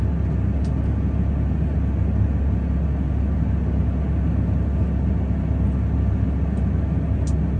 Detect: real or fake real